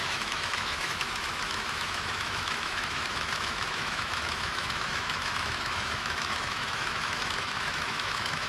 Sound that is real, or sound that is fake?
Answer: fake